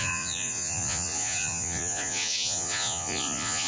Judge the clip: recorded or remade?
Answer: remade